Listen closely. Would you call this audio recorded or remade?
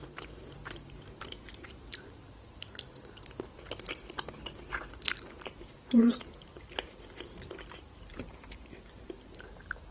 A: remade